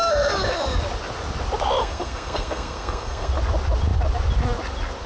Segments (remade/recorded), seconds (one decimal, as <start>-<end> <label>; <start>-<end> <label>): 0.0-1.8 recorded; 1.8-3.3 remade; 3.3-5.1 recorded